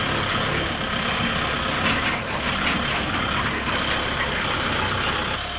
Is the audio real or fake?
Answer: real